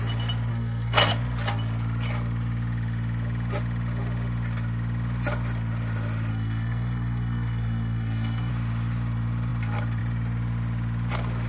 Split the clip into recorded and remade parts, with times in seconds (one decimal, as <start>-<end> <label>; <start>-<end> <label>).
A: 0.0-0.5 recorded; 0.5-1.1 remade; 1.1-6.3 recorded; 6.3-8.5 remade; 8.5-11.5 recorded